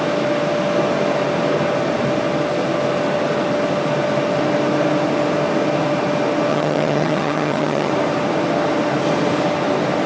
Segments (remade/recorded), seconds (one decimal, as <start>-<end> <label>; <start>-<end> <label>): 0.0-6.5 recorded; 6.5-7.9 remade; 7.9-10.1 recorded